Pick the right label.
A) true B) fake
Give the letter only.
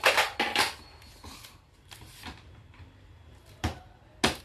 A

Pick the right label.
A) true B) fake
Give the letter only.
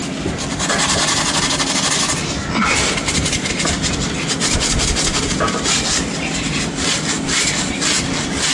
A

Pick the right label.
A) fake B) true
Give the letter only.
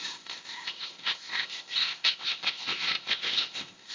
A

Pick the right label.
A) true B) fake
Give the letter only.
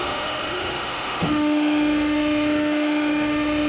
B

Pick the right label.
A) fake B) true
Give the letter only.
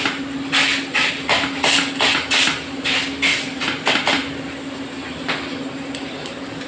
B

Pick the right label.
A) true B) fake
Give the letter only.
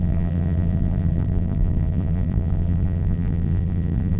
B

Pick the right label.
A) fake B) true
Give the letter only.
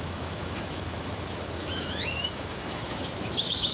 A